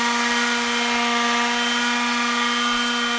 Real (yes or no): yes